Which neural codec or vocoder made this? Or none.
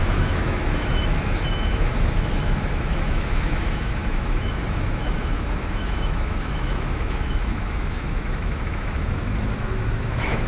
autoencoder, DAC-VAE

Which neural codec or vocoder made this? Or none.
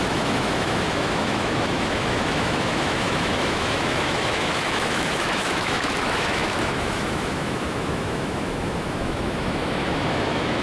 autoencoder, DAC-VAE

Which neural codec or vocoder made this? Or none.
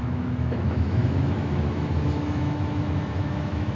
autoencoder, DAC-VAE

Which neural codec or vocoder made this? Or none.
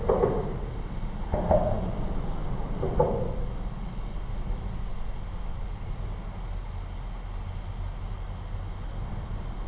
none